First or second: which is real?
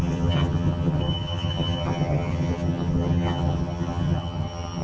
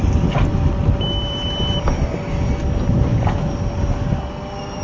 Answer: second